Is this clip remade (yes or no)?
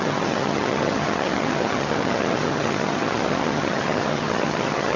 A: yes